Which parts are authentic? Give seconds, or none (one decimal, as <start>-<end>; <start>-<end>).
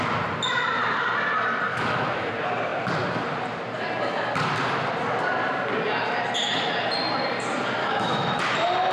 0.0-1.7; 2.3-7.8; 8.4-8.9